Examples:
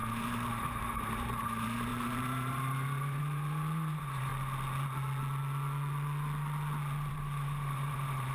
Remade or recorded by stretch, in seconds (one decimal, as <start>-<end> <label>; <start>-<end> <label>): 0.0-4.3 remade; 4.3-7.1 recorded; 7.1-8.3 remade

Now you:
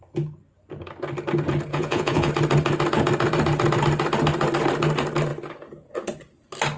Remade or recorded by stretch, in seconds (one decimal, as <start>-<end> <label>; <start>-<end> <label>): 0.0-1.7 recorded; 1.7-2.3 remade; 2.3-6.8 recorded

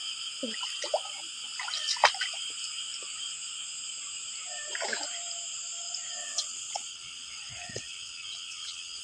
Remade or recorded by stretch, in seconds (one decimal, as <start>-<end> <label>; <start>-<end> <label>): 0.0-6.2 recorded; 6.2-9.0 remade

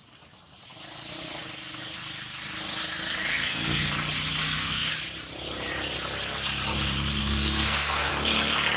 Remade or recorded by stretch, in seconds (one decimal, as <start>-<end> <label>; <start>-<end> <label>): 0.0-3.3 recorded; 3.3-3.8 remade; 3.8-4.4 recorded; 4.4-4.9 remade; 4.9-7.2 recorded; 7.2-8.1 remade; 8.1-8.8 recorded

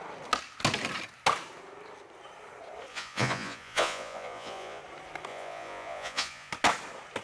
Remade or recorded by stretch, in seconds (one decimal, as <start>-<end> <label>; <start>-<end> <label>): 0.0-2.9 recorded; 2.9-4.8 remade; 4.8-5.3 recorded; 5.3-6.5 remade; 6.5-7.2 recorded

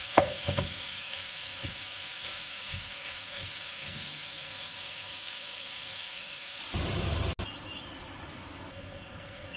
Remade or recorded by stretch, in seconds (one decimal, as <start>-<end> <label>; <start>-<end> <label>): 0.0-6.6 remade; 6.6-8.7 recorded; 8.7-9.6 remade